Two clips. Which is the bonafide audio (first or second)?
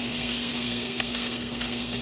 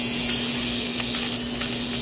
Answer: second